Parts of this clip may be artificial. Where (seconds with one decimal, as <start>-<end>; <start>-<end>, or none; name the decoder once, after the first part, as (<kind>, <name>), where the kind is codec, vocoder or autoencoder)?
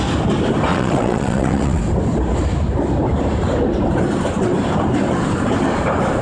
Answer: 0.7-1.8 (vocoder, WaveNeXt)